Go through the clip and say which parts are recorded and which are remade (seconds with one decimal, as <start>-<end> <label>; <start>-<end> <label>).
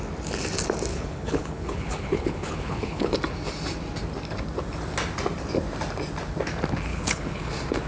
0.0-0.9 recorded; 0.9-3.1 remade; 3.1-6.9 recorded; 6.9-7.5 remade; 7.5-7.9 recorded